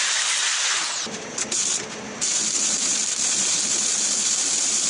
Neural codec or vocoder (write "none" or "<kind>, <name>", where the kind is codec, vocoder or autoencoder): vocoder, BigVGAN v2